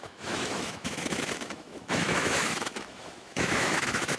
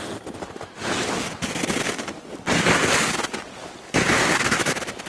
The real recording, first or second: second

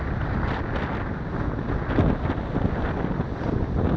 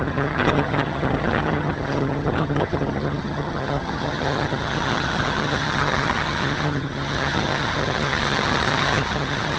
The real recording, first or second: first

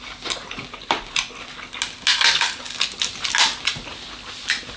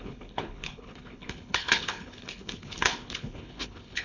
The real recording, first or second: first